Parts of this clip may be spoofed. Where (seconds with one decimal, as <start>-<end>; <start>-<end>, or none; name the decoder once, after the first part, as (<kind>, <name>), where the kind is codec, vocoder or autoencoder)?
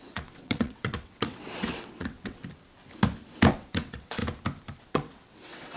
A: 0.0-2.4 (vocoder, WaveNeXt); 3.5-4.2; 4.8-5.8